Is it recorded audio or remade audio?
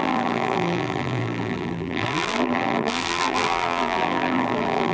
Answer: remade